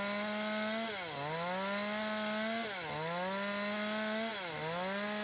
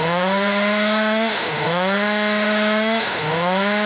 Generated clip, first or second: second